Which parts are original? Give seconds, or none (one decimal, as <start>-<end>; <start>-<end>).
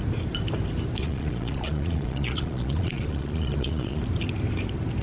0.0-1.0; 4.0-5.0